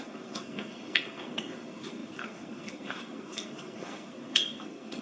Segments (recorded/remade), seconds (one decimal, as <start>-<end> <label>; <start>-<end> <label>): 0.0-5.0 remade